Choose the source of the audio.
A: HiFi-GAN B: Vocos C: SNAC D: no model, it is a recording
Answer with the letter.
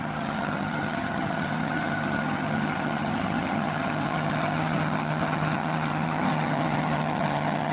A